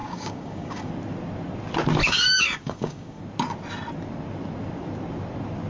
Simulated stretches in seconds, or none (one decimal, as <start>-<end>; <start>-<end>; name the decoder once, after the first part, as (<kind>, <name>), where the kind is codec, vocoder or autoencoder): 0.0-0.9 (codec, DAC); 2.0-3.2